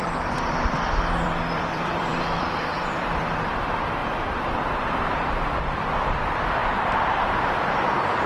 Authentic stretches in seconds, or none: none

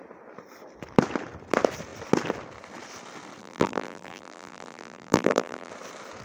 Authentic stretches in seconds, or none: 0.0-3.4; 5.7-6.2

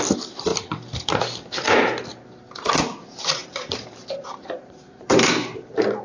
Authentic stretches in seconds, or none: 0.0-0.5; 1.2-3.4; 5.6-6.0

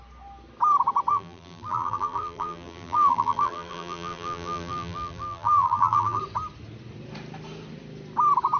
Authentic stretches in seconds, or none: 0.0-1.1; 6.2-8.6

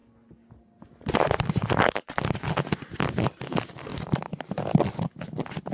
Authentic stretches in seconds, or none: 0.0-3.9; 4.7-5.7

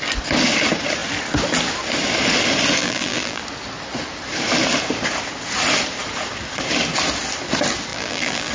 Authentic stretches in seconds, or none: 0.0-2.8; 3.4-7.9

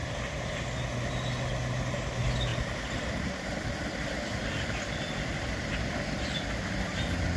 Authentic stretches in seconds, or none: 0.0-2.5; 5.7-7.4